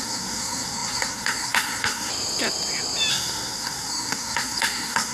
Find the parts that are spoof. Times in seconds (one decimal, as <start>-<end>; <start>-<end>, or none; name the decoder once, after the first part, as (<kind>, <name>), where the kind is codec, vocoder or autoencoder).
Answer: 0.0-2.1 (codec, SNAC); 3.1-5.1